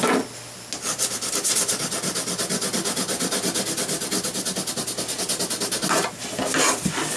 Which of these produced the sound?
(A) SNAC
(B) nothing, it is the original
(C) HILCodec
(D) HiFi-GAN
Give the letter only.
B